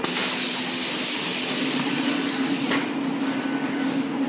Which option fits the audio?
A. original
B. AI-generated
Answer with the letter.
A